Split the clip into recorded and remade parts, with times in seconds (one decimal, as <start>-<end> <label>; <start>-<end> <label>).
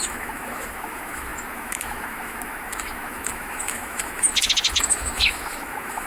0.0-6.1 remade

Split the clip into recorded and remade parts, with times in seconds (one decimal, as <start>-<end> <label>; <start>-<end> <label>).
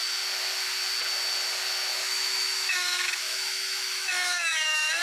0.0-1.9 recorded; 1.9-5.0 remade